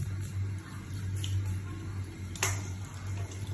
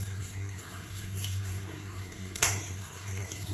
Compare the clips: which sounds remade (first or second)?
second